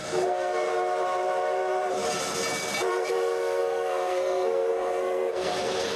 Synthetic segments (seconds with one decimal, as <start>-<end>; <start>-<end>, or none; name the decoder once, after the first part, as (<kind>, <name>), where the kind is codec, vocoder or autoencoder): 0.0-0.7 (codec, SNAC); 2.9-6.0